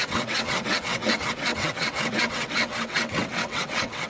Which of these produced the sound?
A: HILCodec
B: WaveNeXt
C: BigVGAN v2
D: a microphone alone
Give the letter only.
B